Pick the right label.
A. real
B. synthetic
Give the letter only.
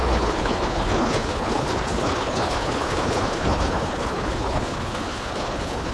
B